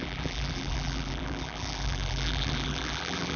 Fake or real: fake